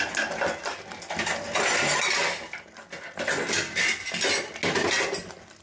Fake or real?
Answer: real